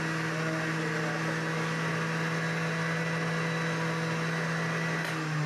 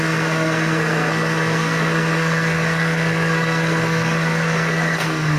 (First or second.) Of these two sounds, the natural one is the first